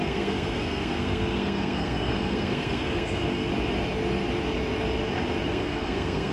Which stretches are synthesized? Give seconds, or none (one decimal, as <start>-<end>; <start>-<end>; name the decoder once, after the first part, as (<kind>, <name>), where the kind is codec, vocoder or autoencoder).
0.0-3.5 (codec, SNAC); 5.5-6.3